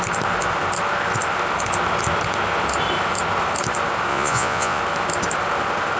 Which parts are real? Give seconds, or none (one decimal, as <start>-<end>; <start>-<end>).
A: 0.0-4.1; 4.8-6.0